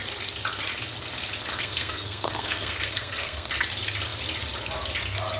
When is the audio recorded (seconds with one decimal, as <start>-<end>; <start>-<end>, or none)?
0.0-1.5; 3.5-5.4